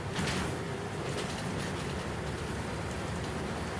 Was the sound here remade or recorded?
remade